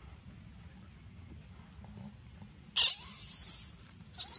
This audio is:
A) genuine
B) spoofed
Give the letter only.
A